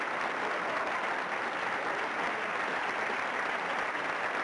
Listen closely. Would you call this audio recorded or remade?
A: recorded